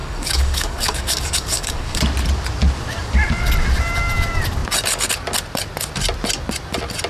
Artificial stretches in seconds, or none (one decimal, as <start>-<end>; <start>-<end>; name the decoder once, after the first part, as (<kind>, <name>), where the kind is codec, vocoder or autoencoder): 0.0-2.0 (codec, DAC)